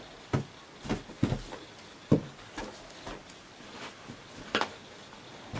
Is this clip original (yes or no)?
yes